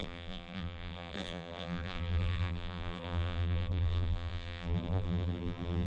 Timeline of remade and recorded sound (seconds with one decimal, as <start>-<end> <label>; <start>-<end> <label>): 0.0-5.9 remade